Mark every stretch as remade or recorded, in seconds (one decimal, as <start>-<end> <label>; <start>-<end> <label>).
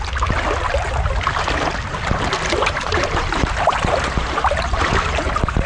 0.0-2.6 recorded; 2.6-5.7 remade